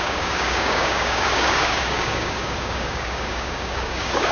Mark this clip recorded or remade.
remade